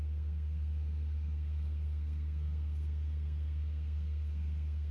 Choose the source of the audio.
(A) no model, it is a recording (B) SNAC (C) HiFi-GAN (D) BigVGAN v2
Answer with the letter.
B